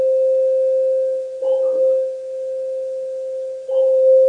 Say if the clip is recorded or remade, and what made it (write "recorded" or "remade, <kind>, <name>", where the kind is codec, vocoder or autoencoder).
recorded